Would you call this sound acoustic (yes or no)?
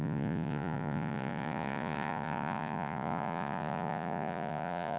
no